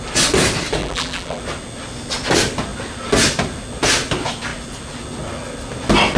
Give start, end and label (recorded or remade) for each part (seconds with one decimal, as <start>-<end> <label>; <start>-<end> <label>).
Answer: 0.0-0.8 recorded; 0.8-1.4 remade; 1.4-6.2 recorded